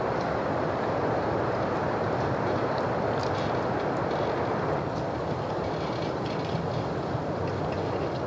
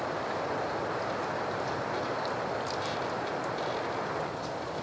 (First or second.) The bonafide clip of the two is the second